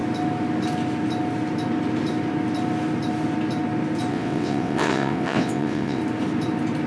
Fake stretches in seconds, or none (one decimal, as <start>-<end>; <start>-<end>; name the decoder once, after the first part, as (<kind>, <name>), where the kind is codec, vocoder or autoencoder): 4.1-6.0 (vocoder, WaveNeXt)